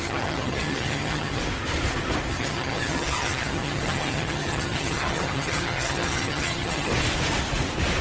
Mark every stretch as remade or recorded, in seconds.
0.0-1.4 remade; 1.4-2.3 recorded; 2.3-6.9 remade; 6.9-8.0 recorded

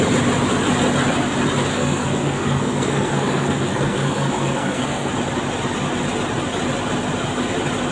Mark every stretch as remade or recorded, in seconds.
0.0-1.7 recorded; 1.7-5.1 remade; 5.1-7.9 recorded

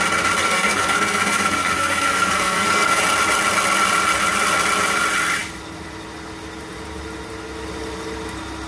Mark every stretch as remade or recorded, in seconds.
0.0-0.4 recorded; 0.4-3.0 remade; 3.0-8.7 recorded